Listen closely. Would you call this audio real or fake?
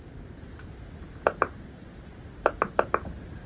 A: real